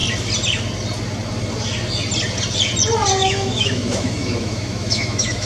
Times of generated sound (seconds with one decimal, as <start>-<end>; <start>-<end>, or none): 3.2-5.5